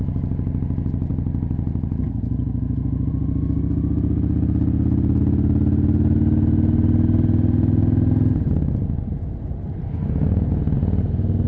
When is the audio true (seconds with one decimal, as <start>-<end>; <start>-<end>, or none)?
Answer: 0.0-11.5